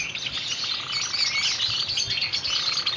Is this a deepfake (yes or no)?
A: no